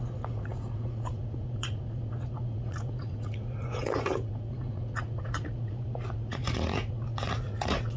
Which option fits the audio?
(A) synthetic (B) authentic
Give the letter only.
A